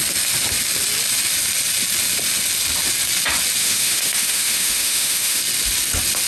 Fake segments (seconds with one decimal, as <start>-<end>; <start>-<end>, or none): 3.6-5.4